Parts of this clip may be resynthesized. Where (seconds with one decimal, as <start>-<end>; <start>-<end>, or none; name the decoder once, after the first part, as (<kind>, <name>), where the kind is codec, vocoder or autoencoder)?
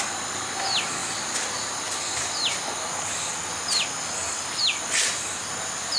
none